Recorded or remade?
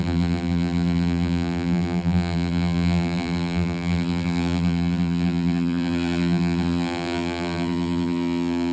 remade